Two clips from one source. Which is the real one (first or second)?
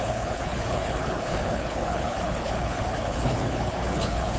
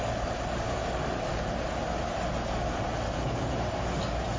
second